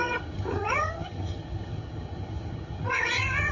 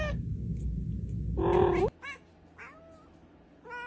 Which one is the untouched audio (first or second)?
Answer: second